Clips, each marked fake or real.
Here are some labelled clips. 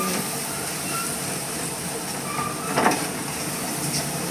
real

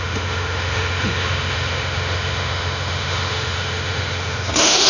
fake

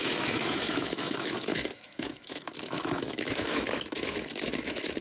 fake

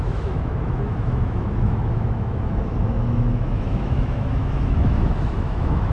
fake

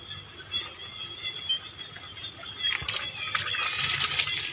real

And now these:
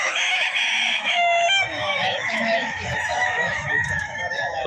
fake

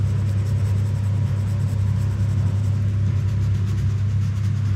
real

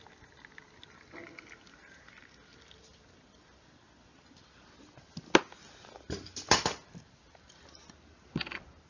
real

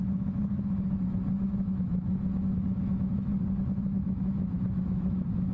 fake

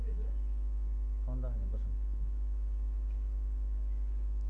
real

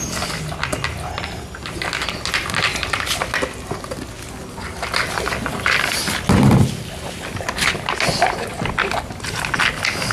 real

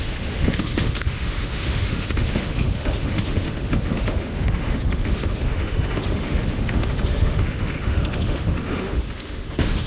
fake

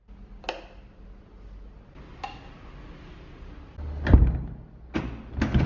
real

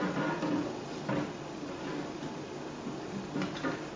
real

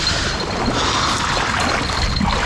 real